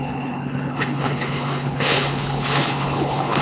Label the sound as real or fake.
fake